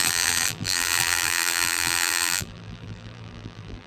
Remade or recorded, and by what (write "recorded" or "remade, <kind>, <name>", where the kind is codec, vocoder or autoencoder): remade, vocoder, BigVGAN v2